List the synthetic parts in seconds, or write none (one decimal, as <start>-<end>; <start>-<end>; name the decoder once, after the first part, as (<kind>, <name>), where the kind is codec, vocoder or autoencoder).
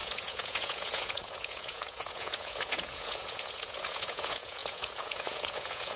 0.0-6.0 (vocoder, Vocos)